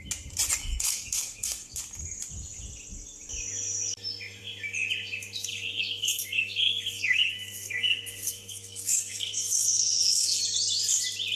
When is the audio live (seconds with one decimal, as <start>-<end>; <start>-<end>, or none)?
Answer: 0.0-0.6; 1.8-5.5; 10.4-11.4